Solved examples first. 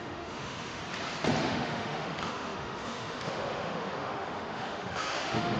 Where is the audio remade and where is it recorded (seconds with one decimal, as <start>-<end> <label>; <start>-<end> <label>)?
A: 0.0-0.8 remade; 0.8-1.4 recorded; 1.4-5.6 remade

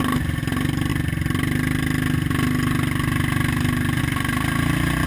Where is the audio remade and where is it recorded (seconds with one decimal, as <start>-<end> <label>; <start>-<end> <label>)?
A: 0.0-5.1 recorded

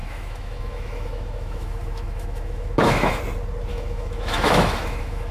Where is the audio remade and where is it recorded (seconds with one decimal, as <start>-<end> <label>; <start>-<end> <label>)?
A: 0.0-3.2 remade; 3.2-3.7 recorded; 3.7-5.3 remade